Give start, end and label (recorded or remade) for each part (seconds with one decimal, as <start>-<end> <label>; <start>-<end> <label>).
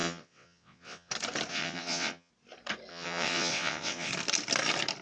0.0-1.1 remade; 1.1-1.5 recorded; 1.5-2.3 remade; 2.3-2.9 recorded; 2.9-4.1 remade; 4.1-5.0 recorded